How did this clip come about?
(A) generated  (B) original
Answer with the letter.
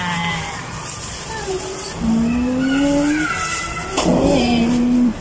B